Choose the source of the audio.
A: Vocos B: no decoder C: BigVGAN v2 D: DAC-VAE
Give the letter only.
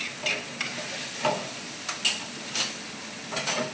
B